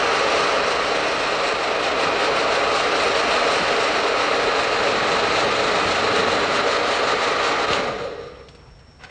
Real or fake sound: real